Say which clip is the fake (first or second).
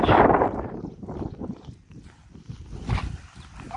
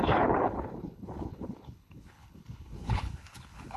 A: second